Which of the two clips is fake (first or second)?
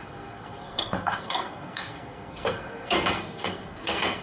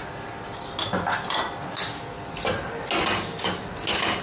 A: first